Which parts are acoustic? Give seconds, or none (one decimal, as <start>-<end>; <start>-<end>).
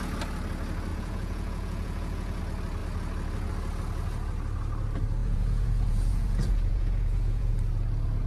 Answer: 0.0-0.9; 2.4-5.2; 7.5-8.3